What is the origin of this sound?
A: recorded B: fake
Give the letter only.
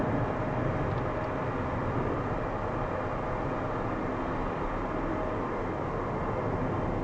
A